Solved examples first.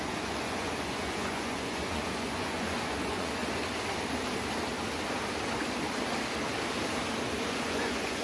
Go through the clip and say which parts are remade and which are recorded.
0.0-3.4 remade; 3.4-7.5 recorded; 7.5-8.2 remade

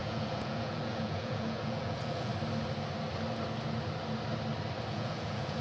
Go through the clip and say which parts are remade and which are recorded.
0.0-2.3 remade; 2.3-4.9 recorded; 4.9-5.6 remade